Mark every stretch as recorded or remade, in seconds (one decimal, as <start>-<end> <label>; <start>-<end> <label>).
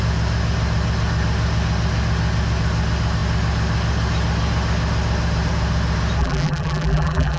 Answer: 0.0-6.2 recorded; 6.2-7.4 remade